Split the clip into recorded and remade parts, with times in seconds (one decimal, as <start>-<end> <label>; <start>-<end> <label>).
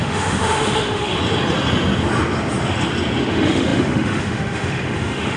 0.0-1.2 remade; 1.2-3.3 recorded; 3.3-5.4 remade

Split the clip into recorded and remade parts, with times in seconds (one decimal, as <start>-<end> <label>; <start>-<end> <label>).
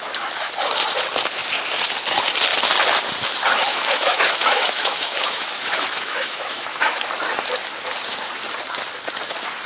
0.0-3.7 recorded; 3.7-7.0 remade; 7.0-9.7 recorded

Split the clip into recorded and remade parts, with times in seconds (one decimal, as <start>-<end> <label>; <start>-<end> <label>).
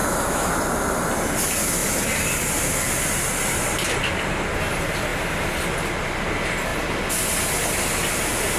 0.0-0.5 remade; 0.5-8.6 recorded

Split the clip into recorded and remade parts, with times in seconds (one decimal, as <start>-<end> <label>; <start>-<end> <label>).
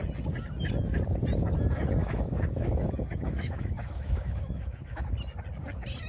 0.0-2.0 recorded; 2.0-5.1 remade; 5.1-6.1 recorded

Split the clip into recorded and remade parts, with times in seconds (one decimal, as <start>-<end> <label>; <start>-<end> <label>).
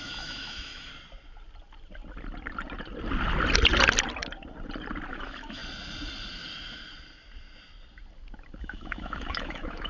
0.0-0.9 remade; 0.9-5.1 recorded; 5.1-5.6 remade; 5.6-8.6 recorded; 8.6-9.9 remade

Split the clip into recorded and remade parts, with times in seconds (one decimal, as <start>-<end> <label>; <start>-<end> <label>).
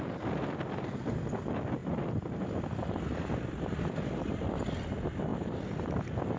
0.0-6.4 recorded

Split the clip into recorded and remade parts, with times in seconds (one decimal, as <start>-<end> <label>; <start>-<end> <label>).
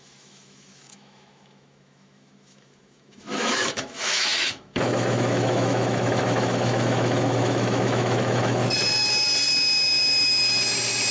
0.0-8.6 remade; 8.6-11.1 recorded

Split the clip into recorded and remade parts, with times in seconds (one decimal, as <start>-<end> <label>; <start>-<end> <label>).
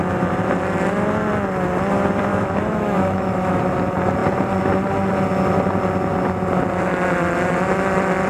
0.0-2.3 recorded; 2.3-3.6 remade; 3.6-8.3 recorded